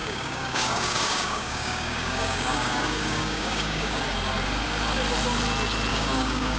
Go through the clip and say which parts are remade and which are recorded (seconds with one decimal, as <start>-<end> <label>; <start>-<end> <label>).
0.0-4.0 remade; 4.0-5.9 recorded; 5.9-6.6 remade